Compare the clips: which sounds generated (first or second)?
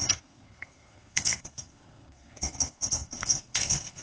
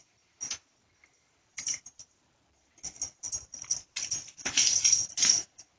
first